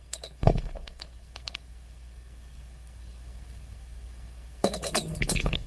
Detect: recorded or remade remade